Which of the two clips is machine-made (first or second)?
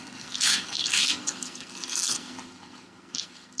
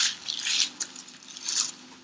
first